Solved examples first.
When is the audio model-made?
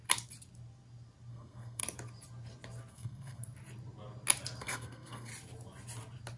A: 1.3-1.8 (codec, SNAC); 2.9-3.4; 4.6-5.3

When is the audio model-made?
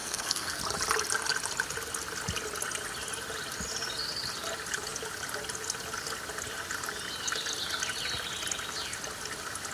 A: 0.0-0.6 (codec, SNAC)